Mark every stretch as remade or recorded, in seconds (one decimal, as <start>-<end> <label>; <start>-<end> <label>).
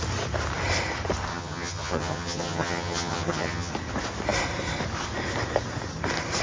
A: 0.0-1.3 recorded; 1.3-3.7 remade; 3.7-6.4 recorded